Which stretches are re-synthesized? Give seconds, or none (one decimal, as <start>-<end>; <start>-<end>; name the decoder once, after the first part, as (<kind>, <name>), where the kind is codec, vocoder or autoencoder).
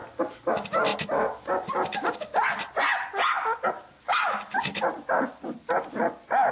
none